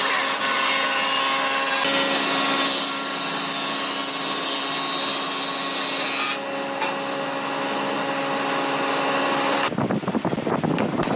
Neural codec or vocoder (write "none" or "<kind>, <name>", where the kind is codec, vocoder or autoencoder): none